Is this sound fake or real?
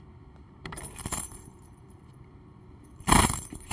fake